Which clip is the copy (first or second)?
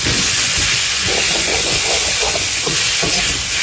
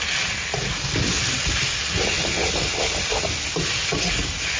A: first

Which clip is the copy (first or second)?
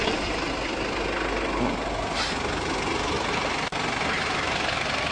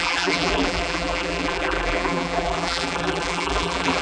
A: second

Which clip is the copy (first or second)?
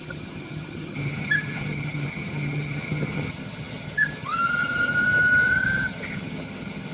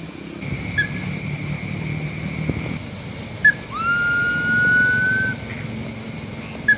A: first